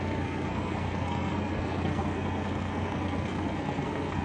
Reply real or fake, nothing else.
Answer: fake